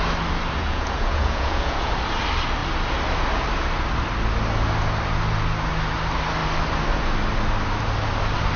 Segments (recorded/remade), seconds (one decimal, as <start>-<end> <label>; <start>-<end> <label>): 0.0-0.6 recorded; 0.6-1.9 remade; 1.9-8.6 recorded